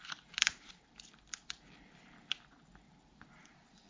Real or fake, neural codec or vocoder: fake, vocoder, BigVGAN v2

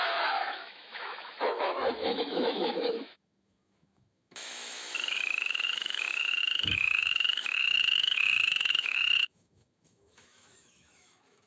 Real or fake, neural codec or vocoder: fake, autoencoder, DAC-VAE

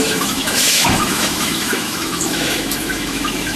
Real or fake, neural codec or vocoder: fake, autoencoder, DAC-VAE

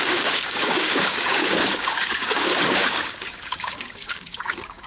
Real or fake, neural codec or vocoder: fake, codec, DAC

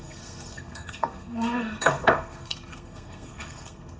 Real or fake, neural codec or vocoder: fake, codec, SNAC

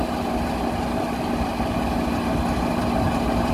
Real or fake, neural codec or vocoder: real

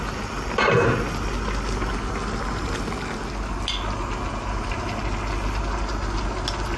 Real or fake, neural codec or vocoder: real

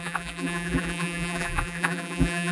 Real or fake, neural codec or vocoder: fake, vocoder, BigVGAN v2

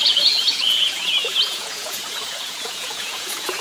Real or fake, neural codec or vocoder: fake, vocoder, Vocos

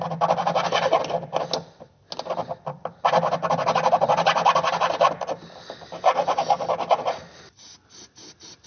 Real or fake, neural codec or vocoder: real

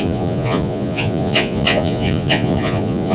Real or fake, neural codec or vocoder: fake, vocoder, Vocos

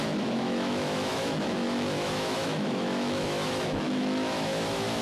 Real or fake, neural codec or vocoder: fake, autoencoder, DAC-VAE